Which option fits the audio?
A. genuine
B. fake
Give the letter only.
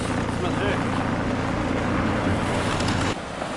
A